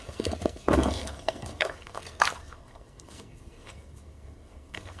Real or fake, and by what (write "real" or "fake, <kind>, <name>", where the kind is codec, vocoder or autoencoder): fake, codec, SNAC